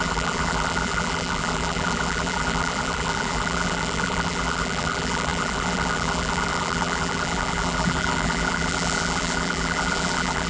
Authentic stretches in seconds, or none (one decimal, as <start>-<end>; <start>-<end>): none